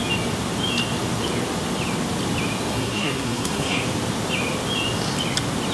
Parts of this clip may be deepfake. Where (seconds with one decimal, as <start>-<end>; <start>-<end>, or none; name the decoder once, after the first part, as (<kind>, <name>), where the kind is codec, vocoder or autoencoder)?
2.7-3.8 (codec, SNAC)